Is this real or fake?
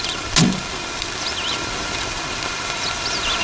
real